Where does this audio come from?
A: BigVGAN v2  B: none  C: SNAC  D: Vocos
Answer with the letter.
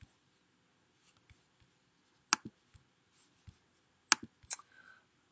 B